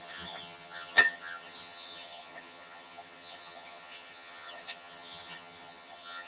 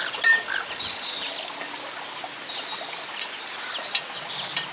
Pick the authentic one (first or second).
second